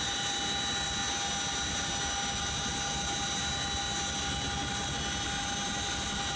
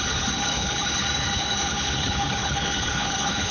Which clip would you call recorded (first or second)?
first